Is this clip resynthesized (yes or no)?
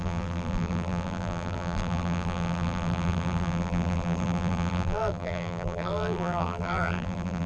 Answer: yes